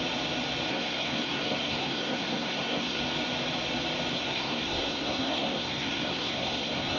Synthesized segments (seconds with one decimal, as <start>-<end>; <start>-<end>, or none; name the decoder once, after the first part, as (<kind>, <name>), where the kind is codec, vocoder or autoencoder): 0.7-3.0 (codec, SNAC); 4.1-7.0